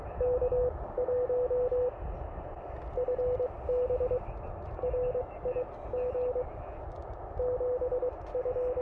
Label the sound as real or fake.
real